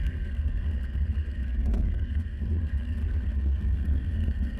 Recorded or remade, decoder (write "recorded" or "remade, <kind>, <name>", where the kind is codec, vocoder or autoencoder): remade, codec, SNAC